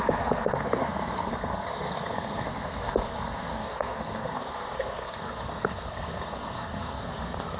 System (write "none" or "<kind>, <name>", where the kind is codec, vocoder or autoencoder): codec, SNAC